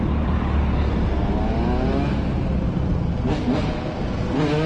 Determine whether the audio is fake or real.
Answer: real